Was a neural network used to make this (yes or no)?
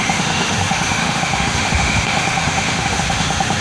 yes